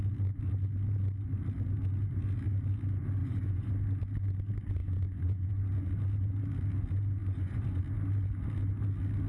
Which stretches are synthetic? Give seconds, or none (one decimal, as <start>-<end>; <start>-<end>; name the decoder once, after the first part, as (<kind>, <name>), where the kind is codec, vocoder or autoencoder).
3.2-3.7 (vocoder, Vocos); 4.8-5.5; 7.2-7.8